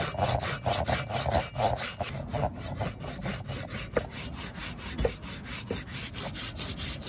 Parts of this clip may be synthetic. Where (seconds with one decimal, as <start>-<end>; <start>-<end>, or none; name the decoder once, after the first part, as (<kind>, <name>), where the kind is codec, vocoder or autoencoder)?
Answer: none